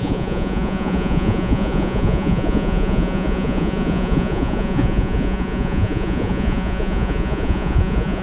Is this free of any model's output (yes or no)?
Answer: no